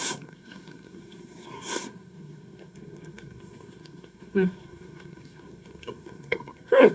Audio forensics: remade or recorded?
remade